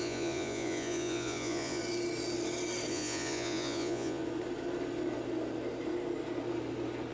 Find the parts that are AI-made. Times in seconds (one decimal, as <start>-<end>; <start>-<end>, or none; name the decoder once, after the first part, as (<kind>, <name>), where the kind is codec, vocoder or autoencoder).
0.0-1.8 (vocoder, Vocos); 2.9-4.2